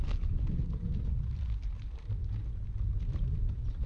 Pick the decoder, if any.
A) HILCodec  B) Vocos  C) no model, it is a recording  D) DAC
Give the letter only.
C